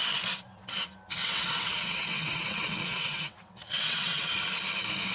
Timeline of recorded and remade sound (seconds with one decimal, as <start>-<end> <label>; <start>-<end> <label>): 0.0-1.2 recorded; 1.2-4.3 remade; 4.3-5.1 recorded